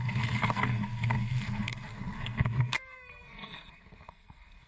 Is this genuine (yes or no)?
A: no